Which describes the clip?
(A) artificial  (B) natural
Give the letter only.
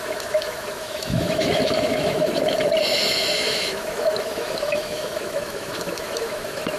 A